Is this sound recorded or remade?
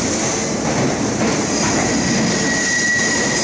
recorded